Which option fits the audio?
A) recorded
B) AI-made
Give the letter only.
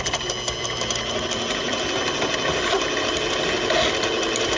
A